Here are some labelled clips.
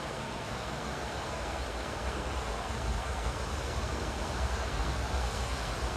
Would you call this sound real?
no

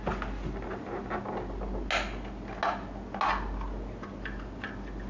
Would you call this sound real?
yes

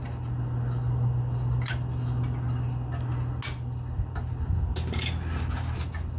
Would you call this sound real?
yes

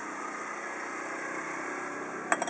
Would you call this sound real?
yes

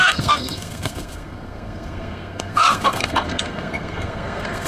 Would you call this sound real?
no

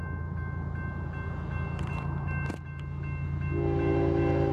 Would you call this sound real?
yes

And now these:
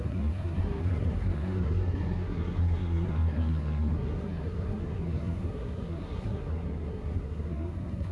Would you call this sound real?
no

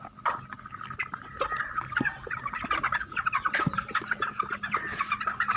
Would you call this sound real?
yes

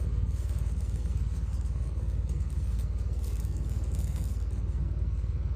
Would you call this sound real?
no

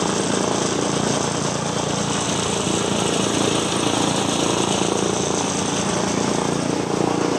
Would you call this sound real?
yes